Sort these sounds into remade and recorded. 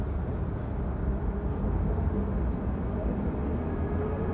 recorded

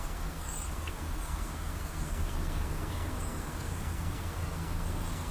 remade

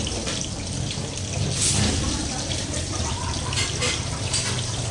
recorded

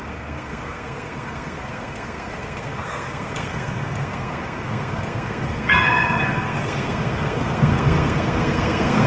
remade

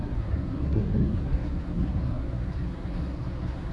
remade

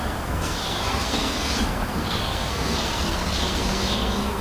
remade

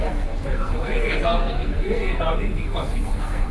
remade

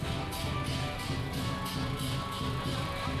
recorded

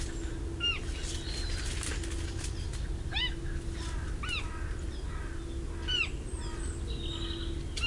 recorded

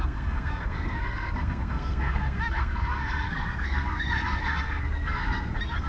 remade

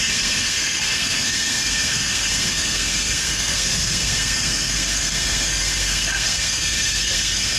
remade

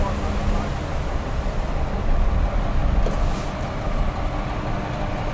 recorded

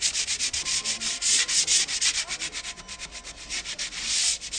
recorded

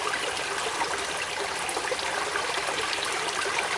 recorded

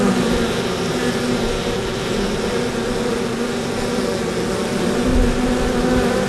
recorded